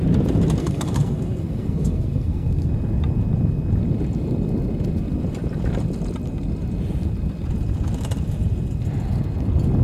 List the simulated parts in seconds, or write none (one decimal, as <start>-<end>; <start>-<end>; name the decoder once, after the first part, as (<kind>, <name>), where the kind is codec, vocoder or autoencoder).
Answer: 0.6-2.7 (codec, SNAC)